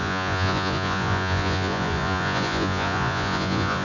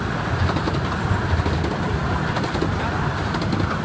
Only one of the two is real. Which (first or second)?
second